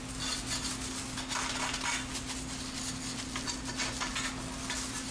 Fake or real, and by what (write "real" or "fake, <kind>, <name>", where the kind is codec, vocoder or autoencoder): real